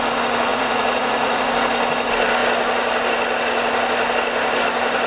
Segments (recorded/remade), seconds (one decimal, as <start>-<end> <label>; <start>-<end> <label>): 0.0-0.5 recorded; 0.5-1.5 remade; 1.5-5.1 recorded